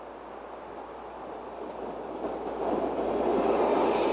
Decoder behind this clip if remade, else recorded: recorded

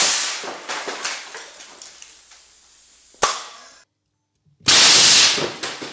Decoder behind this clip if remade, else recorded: recorded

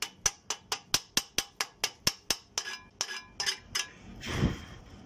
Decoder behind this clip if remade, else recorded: recorded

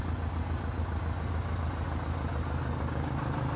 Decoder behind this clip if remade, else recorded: recorded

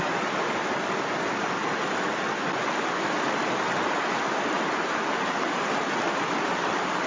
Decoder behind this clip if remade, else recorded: recorded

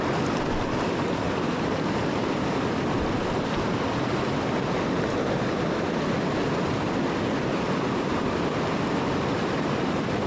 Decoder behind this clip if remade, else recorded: recorded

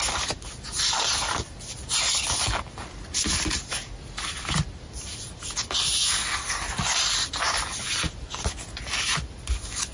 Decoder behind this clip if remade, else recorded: recorded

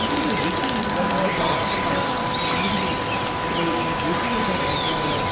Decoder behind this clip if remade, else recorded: recorded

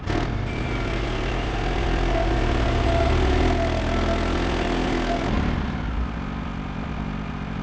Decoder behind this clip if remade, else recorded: recorded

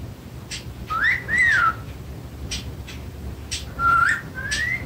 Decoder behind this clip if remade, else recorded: recorded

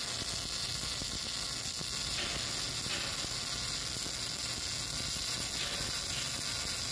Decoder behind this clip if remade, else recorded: recorded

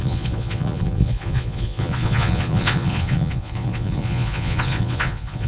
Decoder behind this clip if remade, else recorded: remade, vocoder, Vocos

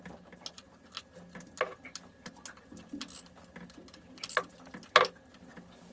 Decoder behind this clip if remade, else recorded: recorded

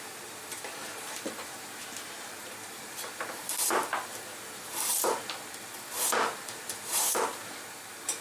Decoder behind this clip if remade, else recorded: remade, vocoder, BigVGAN v2